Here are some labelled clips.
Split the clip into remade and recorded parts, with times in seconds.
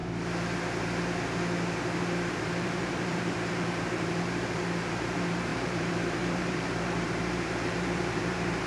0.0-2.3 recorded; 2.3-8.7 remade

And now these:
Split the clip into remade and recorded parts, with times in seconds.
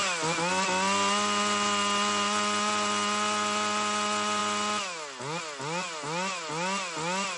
0.0-7.4 recorded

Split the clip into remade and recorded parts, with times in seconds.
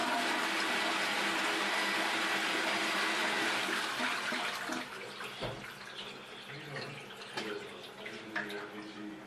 0.0-9.3 recorded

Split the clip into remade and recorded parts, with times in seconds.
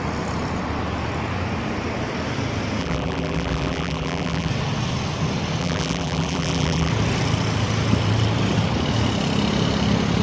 0.0-2.8 recorded; 2.8-4.5 remade; 4.5-5.6 recorded; 5.6-6.9 remade; 6.9-10.2 recorded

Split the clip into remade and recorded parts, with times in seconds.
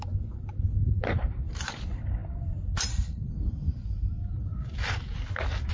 0.0-5.7 recorded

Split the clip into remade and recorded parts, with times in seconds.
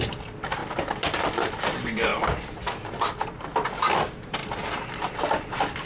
0.0-0.6 remade; 0.6-1.3 recorded; 1.3-2.1 remade; 2.1-3.1 recorded; 3.1-5.9 remade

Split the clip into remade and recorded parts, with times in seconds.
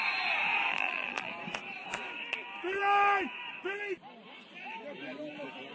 0.0-0.7 recorded; 0.7-1.3 remade; 1.3-5.7 recorded